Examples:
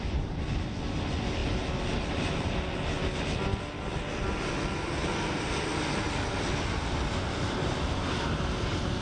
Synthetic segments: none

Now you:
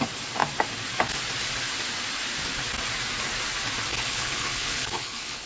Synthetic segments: 3.9-5.5

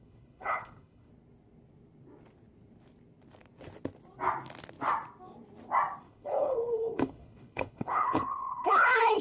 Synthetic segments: 0.0-1.1; 6.0-9.2

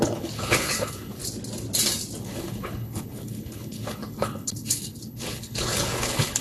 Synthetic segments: 0.0-1.2; 2.2-6.4

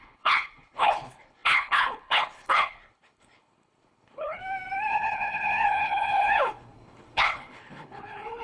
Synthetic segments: 0.0-4.4; 4.9-8.4